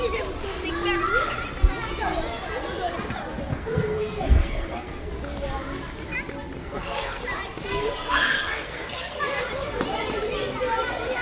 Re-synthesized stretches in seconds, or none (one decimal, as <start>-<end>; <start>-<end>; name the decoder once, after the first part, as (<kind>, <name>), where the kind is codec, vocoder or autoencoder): 3.5-5.1 (codec, SNAC); 6.6-7.2; 7.7-9.4